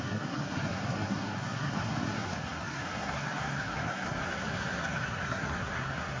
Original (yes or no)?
no